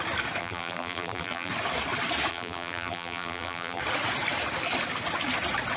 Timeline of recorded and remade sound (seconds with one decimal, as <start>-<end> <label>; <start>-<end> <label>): 0.0-0.4 recorded; 0.4-1.5 remade; 1.5-2.3 recorded; 2.3-3.8 remade; 3.8-5.8 recorded